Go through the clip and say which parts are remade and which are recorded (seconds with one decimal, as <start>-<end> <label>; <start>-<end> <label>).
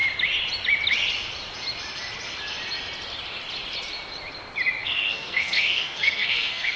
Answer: 0.0-4.8 recorded; 4.8-6.8 remade